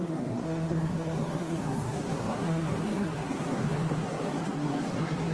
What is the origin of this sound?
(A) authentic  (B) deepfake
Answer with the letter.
B